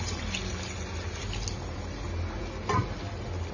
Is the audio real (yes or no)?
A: yes